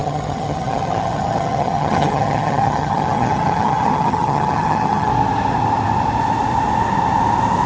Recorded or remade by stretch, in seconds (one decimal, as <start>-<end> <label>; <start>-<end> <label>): 0.0-5.1 remade; 5.1-7.7 recorded